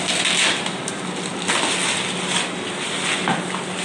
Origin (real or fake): real